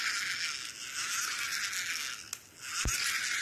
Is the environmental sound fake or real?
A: real